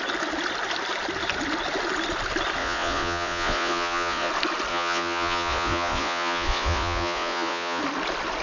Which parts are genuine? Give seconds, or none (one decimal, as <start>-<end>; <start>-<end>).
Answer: 0.0-2.6; 4.3-4.7; 7.8-8.4

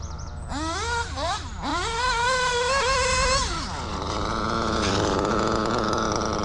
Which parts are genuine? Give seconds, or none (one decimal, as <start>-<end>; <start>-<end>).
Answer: 0.0-6.4

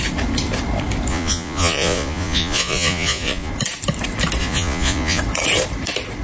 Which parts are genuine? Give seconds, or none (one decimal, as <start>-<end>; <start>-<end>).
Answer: 0.0-1.1; 3.5-4.4; 5.2-6.2

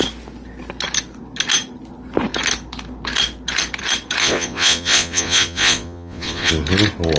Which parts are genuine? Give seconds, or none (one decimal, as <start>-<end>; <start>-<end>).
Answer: 0.0-4.2; 6.5-7.2

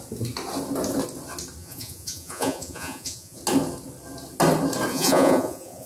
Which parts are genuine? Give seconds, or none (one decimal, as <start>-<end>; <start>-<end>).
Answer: 0.0-1.6; 3.4-4.9

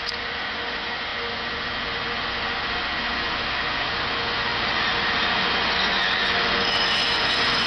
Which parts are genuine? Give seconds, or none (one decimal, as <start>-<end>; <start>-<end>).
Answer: 4.5-5.4

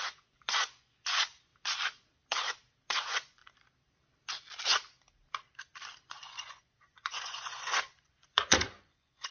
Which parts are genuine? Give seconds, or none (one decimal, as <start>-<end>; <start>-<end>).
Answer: 1.5-3.0; 3.4-6.1

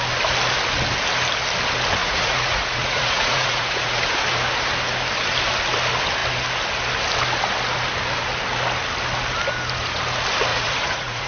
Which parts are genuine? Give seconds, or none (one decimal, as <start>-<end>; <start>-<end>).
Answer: 0.0-2.0; 4.0-10.5